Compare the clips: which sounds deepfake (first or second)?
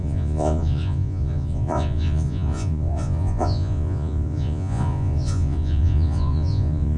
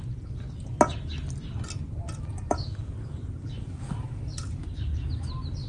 first